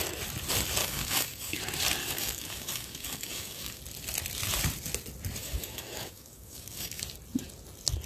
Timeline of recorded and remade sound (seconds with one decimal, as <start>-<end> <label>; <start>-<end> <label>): 0.0-0.8 recorded; 0.8-1.6 remade; 1.6-2.0 recorded; 2.0-3.8 remade; 3.8-5.4 recorded; 5.4-7.0 remade; 7.0-8.1 recorded